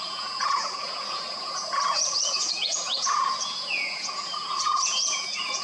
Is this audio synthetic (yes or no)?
yes